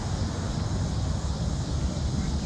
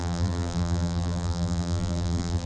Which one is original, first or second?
first